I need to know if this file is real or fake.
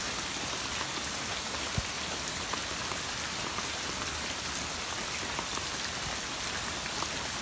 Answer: real